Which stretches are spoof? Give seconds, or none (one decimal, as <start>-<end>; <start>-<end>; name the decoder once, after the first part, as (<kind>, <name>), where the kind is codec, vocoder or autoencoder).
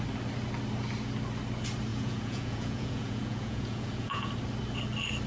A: 1.9-4.3 (vocoder, Vocos)